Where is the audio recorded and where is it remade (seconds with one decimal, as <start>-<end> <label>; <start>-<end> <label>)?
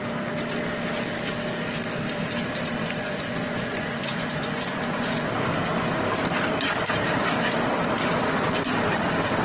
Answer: 0.0-2.8 recorded; 2.8-5.3 remade; 5.3-9.4 recorded